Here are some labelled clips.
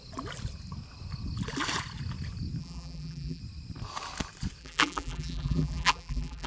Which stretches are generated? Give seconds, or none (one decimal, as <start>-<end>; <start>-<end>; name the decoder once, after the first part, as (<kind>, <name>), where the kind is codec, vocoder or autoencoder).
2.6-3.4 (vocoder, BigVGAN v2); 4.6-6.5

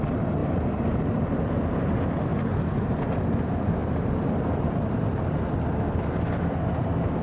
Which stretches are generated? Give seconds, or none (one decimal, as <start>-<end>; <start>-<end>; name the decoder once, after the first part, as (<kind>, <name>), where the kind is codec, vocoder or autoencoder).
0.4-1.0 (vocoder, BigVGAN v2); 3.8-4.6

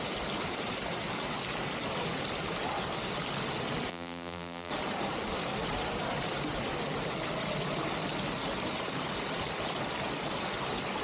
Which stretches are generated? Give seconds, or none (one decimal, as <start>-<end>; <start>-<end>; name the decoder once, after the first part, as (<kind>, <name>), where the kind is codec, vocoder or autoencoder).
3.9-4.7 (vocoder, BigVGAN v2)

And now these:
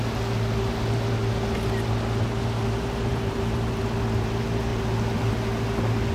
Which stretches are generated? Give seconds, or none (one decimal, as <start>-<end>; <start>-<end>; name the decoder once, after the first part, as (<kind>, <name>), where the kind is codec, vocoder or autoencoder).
3.1-3.8 (vocoder, BigVGAN v2); 4.7-5.3

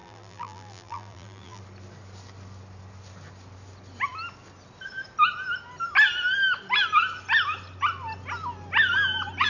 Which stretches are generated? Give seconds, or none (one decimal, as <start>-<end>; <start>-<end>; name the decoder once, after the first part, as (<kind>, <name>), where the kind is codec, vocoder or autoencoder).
0.0-1.6 (vocoder, BigVGAN v2)